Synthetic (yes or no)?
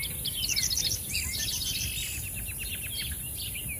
no